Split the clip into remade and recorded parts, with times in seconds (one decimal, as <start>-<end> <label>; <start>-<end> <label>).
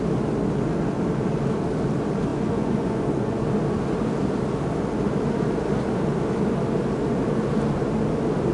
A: 0.0-2.3 recorded; 2.3-3.4 remade; 3.4-8.5 recorded